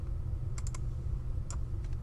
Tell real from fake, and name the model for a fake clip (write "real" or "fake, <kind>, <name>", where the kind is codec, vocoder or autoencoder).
real